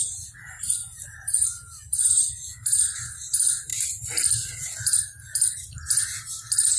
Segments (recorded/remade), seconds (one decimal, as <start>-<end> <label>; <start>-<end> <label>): 0.0-6.8 remade